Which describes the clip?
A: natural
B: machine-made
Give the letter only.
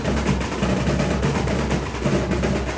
A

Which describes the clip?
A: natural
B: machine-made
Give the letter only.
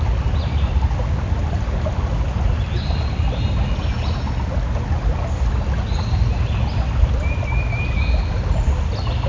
A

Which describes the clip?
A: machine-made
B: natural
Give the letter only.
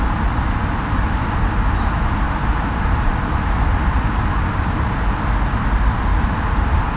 B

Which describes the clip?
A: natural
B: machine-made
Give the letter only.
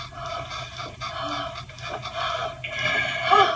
A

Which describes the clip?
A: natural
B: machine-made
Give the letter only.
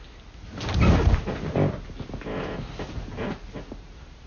A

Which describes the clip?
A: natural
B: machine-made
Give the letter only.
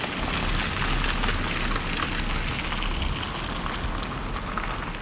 A